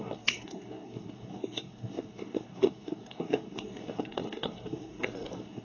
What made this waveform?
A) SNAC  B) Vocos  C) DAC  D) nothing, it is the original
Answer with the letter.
A